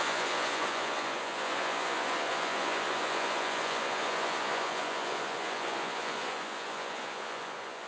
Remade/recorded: remade